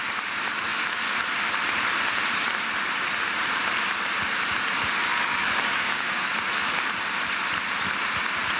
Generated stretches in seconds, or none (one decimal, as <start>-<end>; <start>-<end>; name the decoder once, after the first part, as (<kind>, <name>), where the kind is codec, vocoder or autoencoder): 5.1-6.3 (codec, DAC)